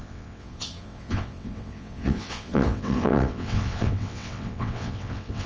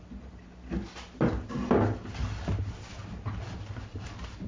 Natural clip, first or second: second